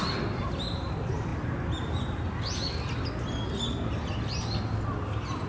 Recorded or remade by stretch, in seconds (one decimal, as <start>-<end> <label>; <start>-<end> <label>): 0.0-5.5 recorded

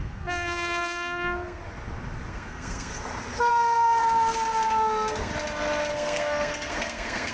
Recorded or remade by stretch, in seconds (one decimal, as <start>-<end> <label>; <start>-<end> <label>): 0.0-1.6 remade; 1.6-2.3 recorded; 2.3-2.9 remade; 2.9-3.5 recorded; 3.5-5.3 remade; 5.3-5.9 recorded; 5.9-7.3 remade

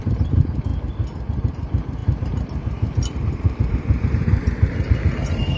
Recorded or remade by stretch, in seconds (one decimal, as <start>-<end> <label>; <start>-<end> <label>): 0.0-0.7 remade; 0.7-1.3 recorded; 1.3-5.6 remade

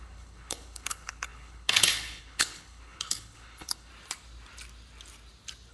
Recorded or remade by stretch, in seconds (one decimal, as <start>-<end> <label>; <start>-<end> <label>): 0.0-3.9 remade; 3.9-5.7 recorded

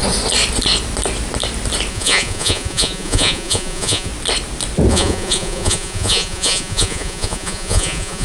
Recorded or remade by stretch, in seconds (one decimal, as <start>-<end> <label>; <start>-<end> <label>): 0.0-1.9 recorded; 1.9-4.1 remade; 4.1-4.9 recorded; 4.9-8.2 remade

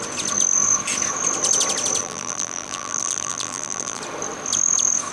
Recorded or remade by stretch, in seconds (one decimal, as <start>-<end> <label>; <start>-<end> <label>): 0.0-2.0 recorded; 2.0-4.0 remade; 4.0-5.1 recorded

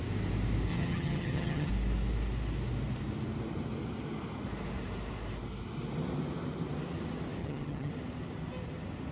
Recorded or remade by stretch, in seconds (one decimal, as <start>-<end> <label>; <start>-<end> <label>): 0.0-0.7 recorded; 0.7-1.7 remade; 1.7-7.4 recorded; 7.4-7.9 remade; 7.9-9.1 recorded

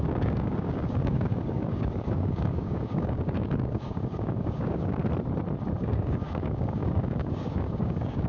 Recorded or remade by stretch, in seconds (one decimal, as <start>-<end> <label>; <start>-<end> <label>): 0.0-5.0 remade; 5.0-5.8 recorded; 5.8-8.3 remade